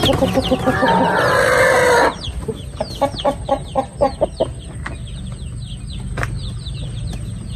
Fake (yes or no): no